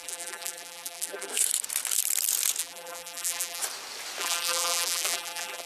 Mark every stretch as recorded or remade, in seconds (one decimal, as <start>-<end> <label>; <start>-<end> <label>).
0.0-1.3 remade; 1.3-2.6 recorded; 2.6-3.6 remade; 3.6-4.2 recorded; 4.2-5.7 remade